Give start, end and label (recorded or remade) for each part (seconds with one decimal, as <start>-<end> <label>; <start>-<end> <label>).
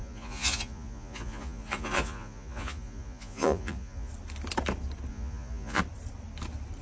0.0-4.1 remade; 4.1-5.1 recorded; 5.1-5.8 remade; 5.8-6.8 recorded